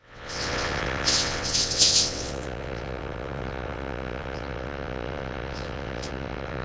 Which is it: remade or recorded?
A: remade